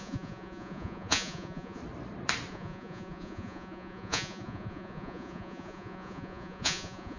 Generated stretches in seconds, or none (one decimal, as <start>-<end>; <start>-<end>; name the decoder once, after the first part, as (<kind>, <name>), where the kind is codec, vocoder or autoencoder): 0.0-1.8 (vocoder, Vocos); 2.5-7.2

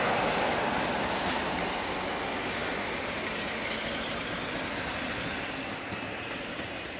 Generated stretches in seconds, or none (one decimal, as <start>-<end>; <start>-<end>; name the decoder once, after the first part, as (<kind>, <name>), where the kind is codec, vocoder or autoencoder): none